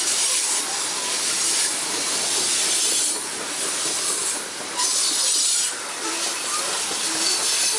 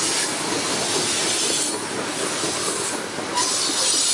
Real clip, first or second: second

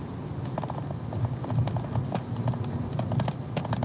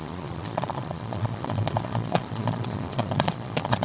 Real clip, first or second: first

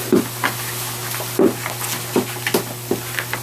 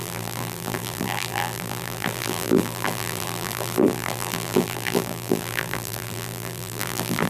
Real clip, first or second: first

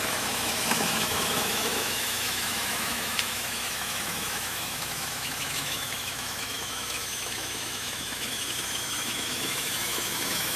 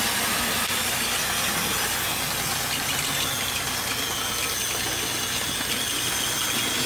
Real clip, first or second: second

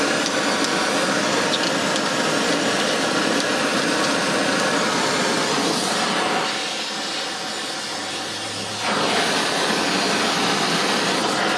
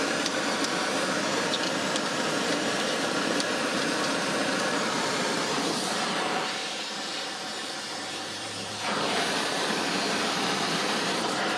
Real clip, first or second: first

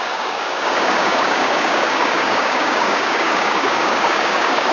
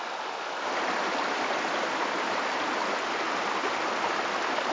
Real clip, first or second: second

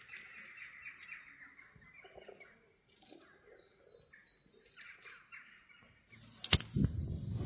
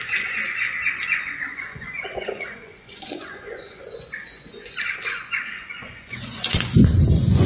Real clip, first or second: first